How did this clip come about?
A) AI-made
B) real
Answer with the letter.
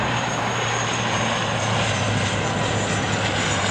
A